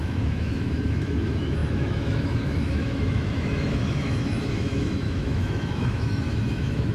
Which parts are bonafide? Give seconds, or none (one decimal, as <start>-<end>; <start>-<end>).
none